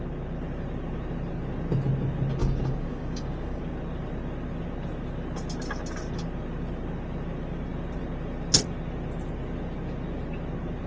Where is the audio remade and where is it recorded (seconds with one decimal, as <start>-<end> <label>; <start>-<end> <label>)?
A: 0.0-2.4 recorded; 2.4-3.6 remade; 3.6-10.9 recorded

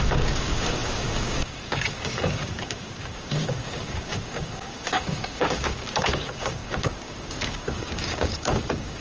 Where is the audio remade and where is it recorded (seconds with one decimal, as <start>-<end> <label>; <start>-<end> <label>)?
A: 0.0-9.0 remade

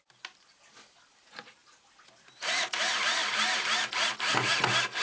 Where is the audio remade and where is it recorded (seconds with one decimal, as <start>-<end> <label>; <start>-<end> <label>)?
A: 0.0-5.0 recorded

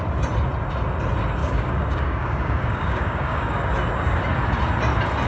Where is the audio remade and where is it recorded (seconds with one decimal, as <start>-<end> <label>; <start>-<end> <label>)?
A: 0.0-1.4 recorded; 1.4-3.7 remade; 3.7-5.3 recorded

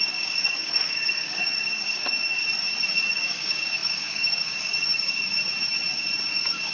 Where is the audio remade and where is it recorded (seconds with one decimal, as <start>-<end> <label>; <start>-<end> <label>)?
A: 0.0-2.4 remade; 2.4-3.1 recorded; 3.1-5.4 remade; 5.4-6.3 recorded; 6.3-6.7 remade

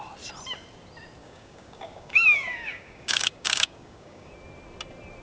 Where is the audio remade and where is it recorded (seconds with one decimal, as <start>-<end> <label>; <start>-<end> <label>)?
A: 0.0-1.2 recorded; 1.2-4.3 remade; 4.3-5.2 recorded

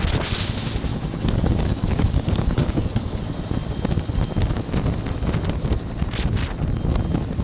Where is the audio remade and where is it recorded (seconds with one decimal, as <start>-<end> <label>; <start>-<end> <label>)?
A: 0.0-0.9 recorded; 0.9-3.2 remade; 3.2-7.4 recorded